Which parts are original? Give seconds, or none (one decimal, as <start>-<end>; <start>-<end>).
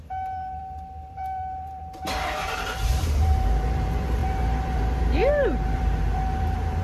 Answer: none